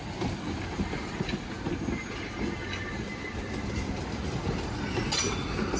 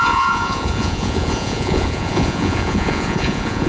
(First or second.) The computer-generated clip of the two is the second